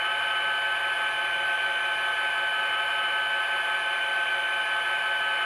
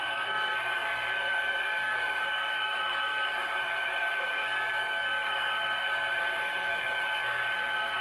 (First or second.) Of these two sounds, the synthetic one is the second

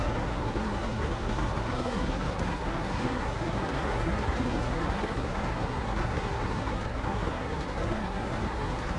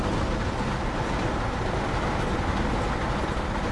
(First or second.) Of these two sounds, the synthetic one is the first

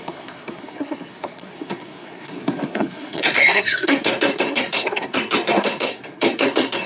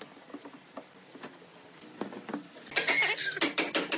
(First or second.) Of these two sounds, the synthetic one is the first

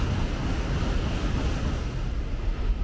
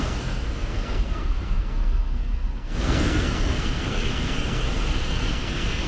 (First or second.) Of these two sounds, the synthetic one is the second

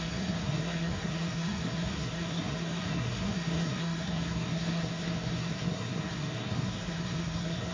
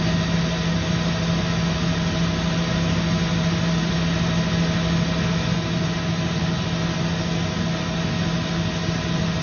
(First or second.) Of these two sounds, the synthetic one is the first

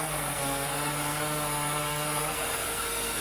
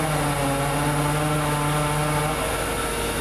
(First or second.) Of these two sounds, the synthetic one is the first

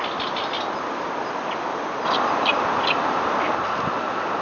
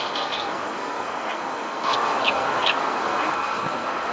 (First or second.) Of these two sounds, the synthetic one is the second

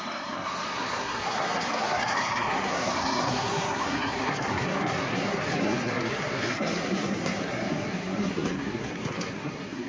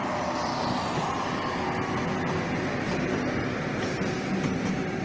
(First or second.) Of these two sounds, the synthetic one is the first